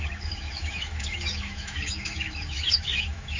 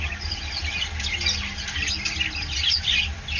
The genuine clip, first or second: second